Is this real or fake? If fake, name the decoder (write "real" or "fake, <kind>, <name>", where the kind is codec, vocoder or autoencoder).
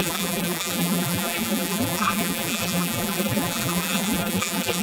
fake, vocoder, BigVGAN v2